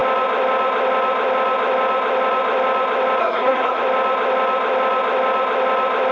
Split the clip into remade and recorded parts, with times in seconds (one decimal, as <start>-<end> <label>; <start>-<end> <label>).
0.0-3.2 recorded; 3.2-3.8 remade; 3.8-6.1 recorded